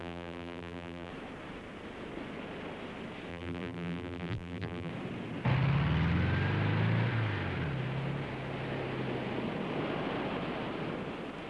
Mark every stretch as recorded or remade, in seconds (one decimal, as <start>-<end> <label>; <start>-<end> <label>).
0.0-1.1 remade; 1.1-3.3 recorded; 3.3-4.9 remade; 4.9-11.5 recorded